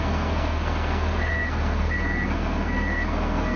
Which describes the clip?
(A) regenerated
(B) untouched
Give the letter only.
A